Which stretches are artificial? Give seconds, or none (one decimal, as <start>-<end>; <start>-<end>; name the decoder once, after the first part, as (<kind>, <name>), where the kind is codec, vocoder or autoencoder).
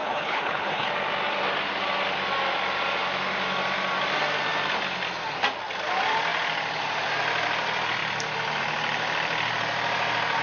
0.0-0.9 (codec, HILCodec)